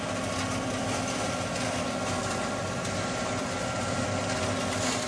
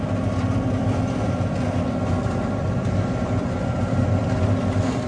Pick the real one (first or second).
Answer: first